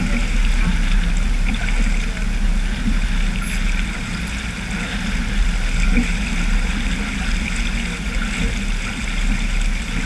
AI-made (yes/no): no